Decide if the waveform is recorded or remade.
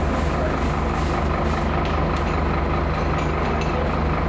recorded